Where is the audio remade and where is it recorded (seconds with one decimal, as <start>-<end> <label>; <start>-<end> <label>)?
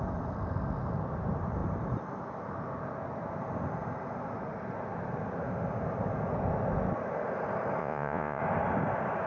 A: 0.0-7.8 recorded; 7.8-8.4 remade; 8.4-9.3 recorded